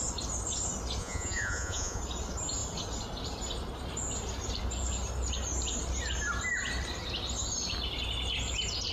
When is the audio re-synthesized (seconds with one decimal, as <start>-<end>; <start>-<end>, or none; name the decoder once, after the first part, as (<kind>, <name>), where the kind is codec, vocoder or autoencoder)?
1.0-2.0 (vocoder, Vocos)